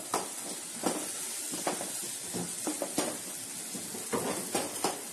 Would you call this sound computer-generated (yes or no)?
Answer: no